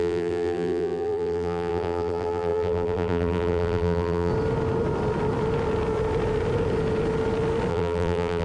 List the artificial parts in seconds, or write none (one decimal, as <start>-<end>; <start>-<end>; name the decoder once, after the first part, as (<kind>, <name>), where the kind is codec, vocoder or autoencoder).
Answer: 0.0-4.3 (vocoder, BigVGAN v2); 7.7-8.4